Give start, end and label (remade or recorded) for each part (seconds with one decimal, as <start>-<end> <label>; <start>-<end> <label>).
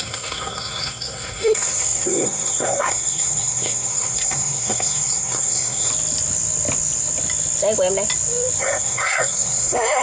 0.0-5.9 remade; 5.9-8.6 recorded; 8.6-10.0 remade